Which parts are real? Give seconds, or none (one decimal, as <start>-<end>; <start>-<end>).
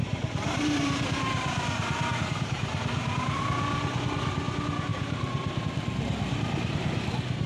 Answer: 3.4-4.9; 5.6-7.5